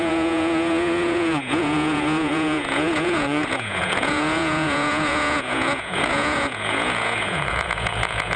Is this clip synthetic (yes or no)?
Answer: yes